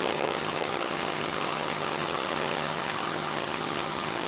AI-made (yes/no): yes